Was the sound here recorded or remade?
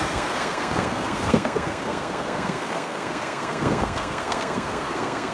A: remade